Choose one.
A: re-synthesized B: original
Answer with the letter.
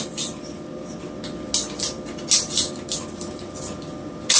B